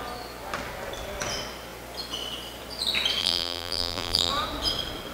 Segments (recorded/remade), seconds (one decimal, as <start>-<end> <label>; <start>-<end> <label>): 0.0-3.2 recorded; 3.2-4.3 remade; 4.3-5.1 recorded